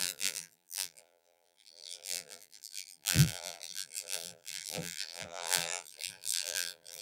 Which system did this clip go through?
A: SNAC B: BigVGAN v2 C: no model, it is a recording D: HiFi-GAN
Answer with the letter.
B